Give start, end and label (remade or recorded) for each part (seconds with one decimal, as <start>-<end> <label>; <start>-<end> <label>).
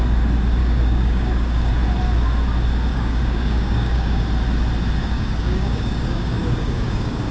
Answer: 0.0-0.6 recorded; 0.6-1.7 remade; 1.7-2.9 recorded; 2.9-4.2 remade; 4.2-5.0 recorded; 5.0-7.3 remade